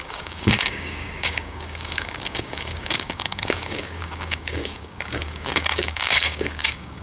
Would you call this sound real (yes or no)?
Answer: no